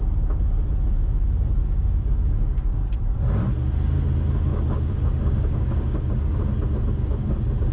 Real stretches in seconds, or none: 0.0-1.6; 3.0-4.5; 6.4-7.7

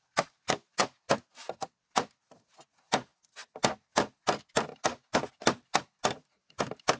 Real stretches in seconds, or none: 0.0-7.0

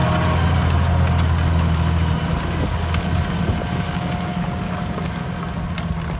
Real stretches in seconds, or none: 0.0-3.7; 5.2-6.2

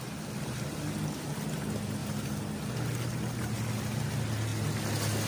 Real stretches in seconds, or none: 0.0-5.3